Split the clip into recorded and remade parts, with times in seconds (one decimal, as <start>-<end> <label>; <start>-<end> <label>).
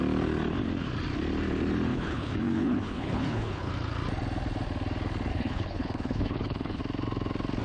0.0-1.9 recorded; 1.9-3.7 remade; 3.7-5.3 recorded; 5.3-6.8 remade; 6.8-7.6 recorded